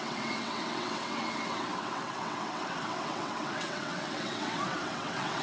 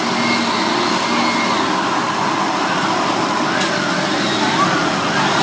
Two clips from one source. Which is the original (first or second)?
second